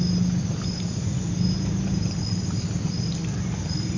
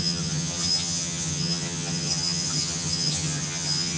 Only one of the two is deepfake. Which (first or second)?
second